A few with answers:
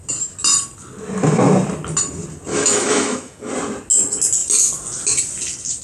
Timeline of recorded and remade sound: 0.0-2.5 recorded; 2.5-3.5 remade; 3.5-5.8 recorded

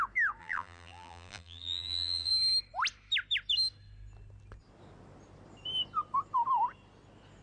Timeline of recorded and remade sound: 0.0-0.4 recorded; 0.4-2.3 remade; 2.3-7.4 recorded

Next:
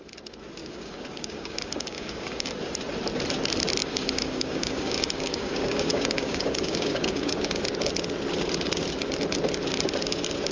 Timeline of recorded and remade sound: 0.0-0.6 recorded; 0.6-2.5 remade; 2.5-3.8 recorded; 3.8-7.6 remade; 7.6-10.5 recorded

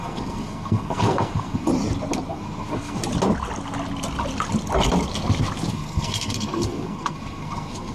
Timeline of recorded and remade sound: 0.0-1.7 remade; 1.7-2.3 recorded; 2.3-3.0 remade; 3.0-5.7 recorded; 5.7-7.9 remade

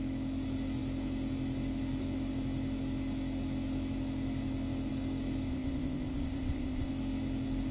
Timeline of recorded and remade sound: 0.0-5.5 recorded; 5.5-6.9 remade; 6.9-7.7 recorded